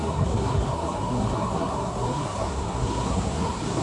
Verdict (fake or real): fake